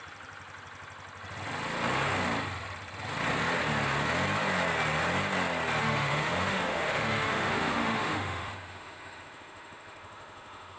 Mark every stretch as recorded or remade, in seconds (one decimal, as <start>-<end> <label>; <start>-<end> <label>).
0.0-5.8 recorded; 5.8-10.8 remade